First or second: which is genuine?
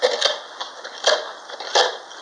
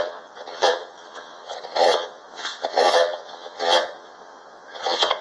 first